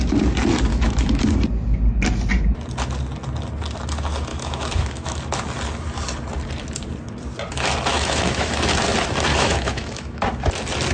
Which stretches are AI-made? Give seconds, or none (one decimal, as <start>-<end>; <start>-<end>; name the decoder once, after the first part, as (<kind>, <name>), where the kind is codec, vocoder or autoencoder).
0.7-1.2 (autoencoder, DAC-VAE); 4.3-5.2; 7.9-8.5; 9.3-10.3